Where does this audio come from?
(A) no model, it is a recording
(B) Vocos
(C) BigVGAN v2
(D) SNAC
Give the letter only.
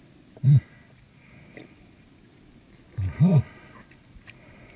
A